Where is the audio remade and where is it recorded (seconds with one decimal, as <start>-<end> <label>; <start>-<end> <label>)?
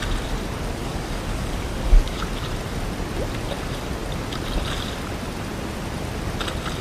0.0-0.8 recorded; 0.8-2.2 remade; 2.2-6.8 recorded